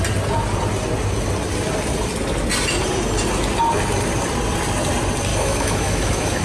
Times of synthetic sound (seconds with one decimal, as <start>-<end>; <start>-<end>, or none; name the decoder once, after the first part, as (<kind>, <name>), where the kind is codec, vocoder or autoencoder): 5.3-6.4 (autoencoder, DAC-VAE)